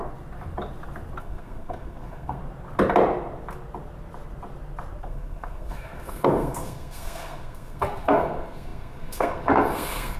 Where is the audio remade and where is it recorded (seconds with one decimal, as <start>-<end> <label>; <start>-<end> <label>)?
0.0-1.2 recorded; 1.2-2.4 remade; 2.4-5.0 recorded; 5.0-10.2 remade